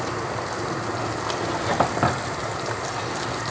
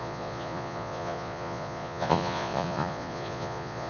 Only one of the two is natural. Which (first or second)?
first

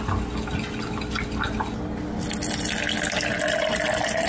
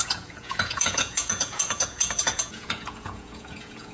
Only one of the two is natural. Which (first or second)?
first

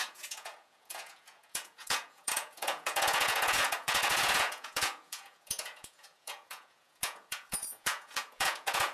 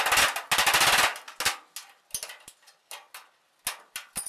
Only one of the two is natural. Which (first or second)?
second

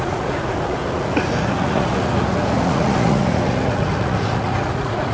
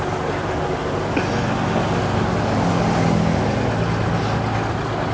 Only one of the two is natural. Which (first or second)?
second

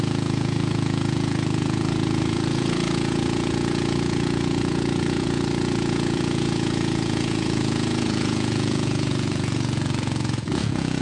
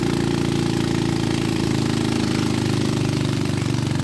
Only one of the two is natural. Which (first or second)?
second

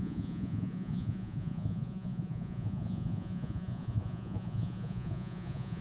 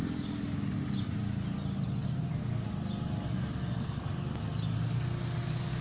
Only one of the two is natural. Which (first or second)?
second